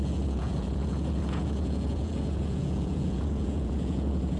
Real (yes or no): no